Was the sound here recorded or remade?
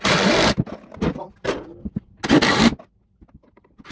recorded